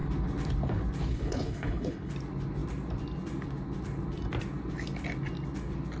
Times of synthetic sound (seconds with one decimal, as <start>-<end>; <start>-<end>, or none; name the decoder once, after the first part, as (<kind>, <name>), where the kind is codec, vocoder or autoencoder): 1.1-2.1 (codec, HILCodec)